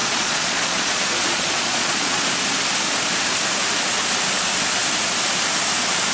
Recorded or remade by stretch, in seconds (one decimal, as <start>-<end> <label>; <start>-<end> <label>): 0.0-2.2 remade; 2.2-6.1 recorded